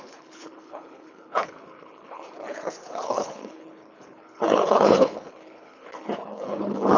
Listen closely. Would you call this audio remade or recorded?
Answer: remade